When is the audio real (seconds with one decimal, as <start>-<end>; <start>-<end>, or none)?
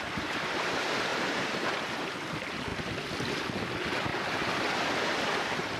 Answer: 0.0-1.1; 2.1-4.1; 4.6-5.8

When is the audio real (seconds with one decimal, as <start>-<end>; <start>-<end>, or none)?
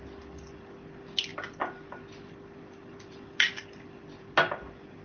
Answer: 0.0-1.3; 4.3-5.0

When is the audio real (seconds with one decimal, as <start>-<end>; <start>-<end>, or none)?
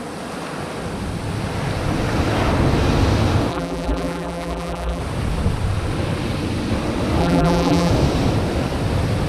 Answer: 0.0-3.5; 5.0-7.2; 7.9-9.3